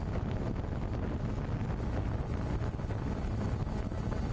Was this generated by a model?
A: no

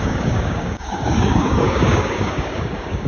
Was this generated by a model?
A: yes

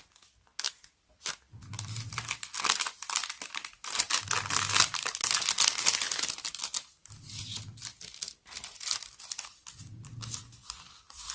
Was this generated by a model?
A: no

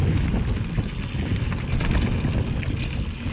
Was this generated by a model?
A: no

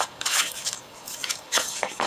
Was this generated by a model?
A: yes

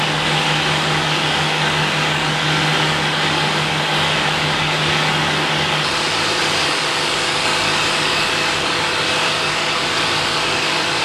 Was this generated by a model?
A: yes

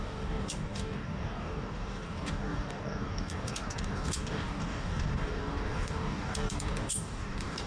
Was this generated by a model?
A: yes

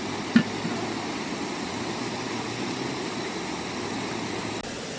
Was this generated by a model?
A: no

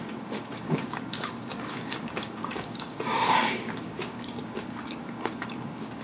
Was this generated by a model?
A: yes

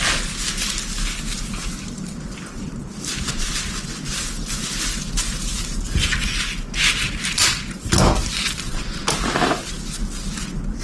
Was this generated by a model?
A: no